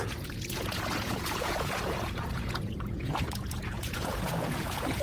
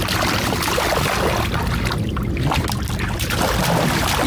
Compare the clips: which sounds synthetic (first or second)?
first